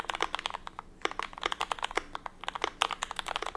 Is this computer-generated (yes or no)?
no